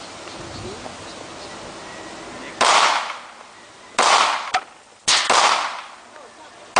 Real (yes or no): yes